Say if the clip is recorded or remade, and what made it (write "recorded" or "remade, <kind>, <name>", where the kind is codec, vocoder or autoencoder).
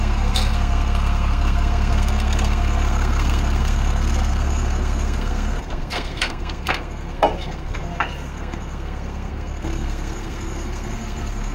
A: remade, codec, SNAC